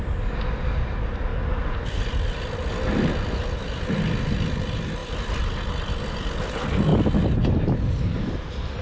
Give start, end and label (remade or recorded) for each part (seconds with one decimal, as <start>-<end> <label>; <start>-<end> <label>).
0.0-8.8 recorded